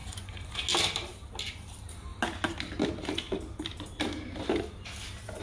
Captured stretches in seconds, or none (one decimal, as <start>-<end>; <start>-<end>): 0.5-5.4